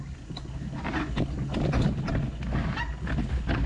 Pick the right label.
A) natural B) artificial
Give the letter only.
A